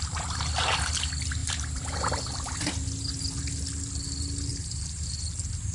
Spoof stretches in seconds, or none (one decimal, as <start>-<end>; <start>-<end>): 1.4-2.6; 4.5-5.1

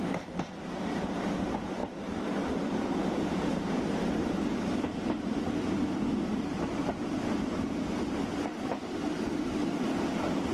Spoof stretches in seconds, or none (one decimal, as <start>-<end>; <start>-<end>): none

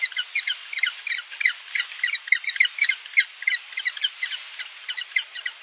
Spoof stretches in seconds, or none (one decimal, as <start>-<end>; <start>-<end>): 4.8-5.6

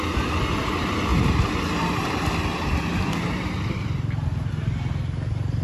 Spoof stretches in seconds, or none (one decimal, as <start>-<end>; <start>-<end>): none

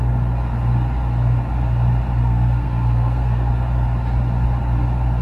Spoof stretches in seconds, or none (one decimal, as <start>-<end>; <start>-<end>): 2.2-3.5

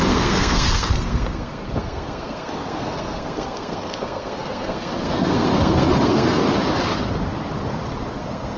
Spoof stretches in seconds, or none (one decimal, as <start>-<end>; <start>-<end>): 0.0-6.4; 8.1-8.6

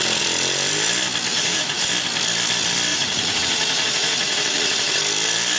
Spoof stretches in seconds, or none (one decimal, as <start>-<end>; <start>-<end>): 1.3-1.9; 2.9-5.0

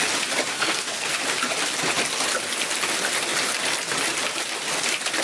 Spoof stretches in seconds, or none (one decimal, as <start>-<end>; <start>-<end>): 0.5-1.2